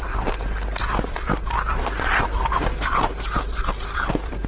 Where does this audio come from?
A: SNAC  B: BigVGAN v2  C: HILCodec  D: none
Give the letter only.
D